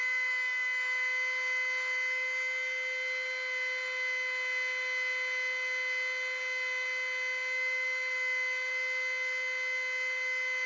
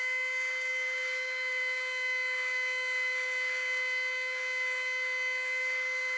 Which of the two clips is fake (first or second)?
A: second